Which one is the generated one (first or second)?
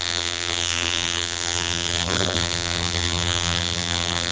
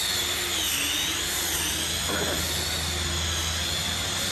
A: first